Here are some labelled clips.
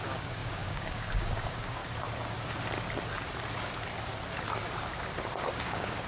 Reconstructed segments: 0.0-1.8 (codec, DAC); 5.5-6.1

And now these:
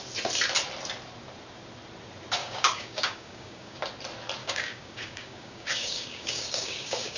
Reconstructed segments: 2.4-3.8 (codec, DAC); 4.4-7.2

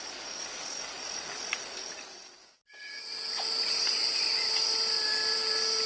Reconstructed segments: 2.4-3.0 (codec, DAC)

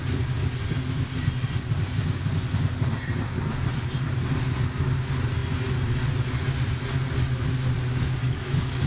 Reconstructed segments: 8.2-8.9 (codec, DAC)

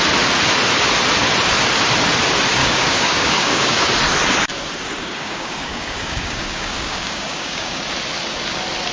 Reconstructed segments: 2.6-3.9 (codec, DAC); 4.5-7.8

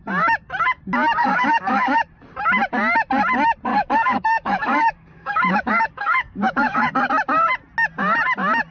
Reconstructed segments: 1.2-2.0 (codec, DAC); 3.7-7.1

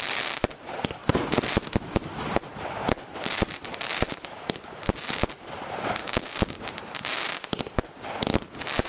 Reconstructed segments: 6.0-6.6 (codec, DAC)

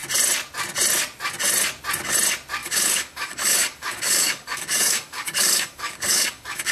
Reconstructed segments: 2.6-6.7 (codec, DAC)